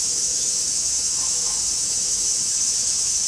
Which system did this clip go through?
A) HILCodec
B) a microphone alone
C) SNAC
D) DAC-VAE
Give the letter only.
D